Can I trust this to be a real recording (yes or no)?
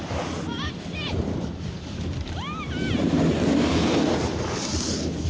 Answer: yes